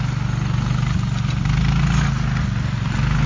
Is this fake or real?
real